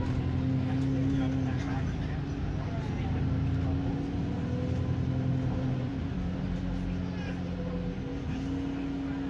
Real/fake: real